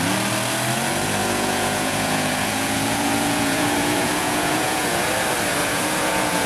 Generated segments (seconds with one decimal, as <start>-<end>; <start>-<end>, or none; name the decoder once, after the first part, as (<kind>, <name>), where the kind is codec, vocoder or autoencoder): 1.2-5.1 (vocoder, Vocos); 5.6-6.5